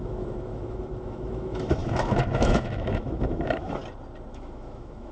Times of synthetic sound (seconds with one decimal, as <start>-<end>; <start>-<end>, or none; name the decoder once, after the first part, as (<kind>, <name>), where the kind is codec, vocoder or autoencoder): 0.0-3.8 (autoencoder, DAC-VAE); 4.3-5.1